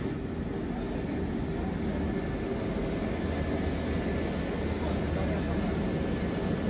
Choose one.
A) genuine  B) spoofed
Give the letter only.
A